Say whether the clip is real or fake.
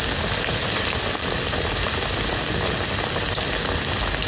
real